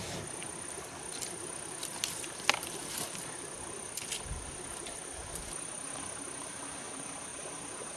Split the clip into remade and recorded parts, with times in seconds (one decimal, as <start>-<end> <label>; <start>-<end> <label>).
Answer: 0.0-1.8 recorded; 1.8-2.8 remade; 2.8-8.0 recorded